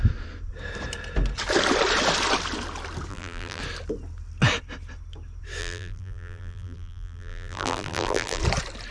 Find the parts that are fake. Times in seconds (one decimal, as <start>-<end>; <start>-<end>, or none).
3.1-3.6; 5.6-8.4